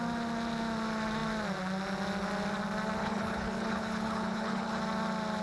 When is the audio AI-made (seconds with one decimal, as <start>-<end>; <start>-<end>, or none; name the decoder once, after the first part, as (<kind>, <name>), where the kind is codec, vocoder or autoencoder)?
3.0-4.8 (codec, HILCodec)